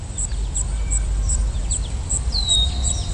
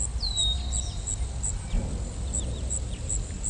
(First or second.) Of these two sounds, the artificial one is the first